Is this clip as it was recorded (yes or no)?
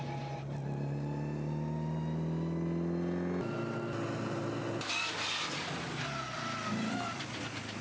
yes